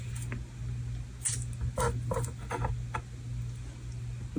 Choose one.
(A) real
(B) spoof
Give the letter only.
A